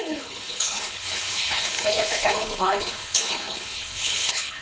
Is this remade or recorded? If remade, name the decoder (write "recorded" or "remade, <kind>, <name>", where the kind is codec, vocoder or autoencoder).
remade, codec, HILCodec